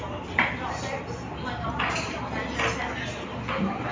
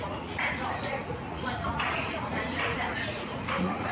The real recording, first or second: first